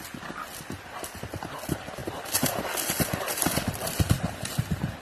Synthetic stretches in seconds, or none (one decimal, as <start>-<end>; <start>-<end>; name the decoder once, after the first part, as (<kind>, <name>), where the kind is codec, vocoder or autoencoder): none